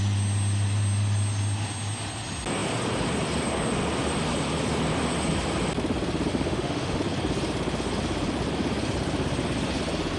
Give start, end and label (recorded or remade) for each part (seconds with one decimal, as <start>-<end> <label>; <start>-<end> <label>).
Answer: 0.0-6.3 recorded; 6.3-7.0 remade; 7.0-10.2 recorded